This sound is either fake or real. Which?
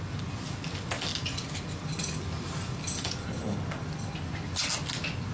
real